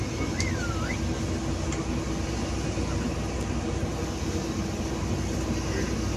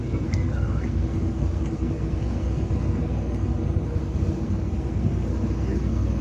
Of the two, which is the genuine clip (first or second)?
first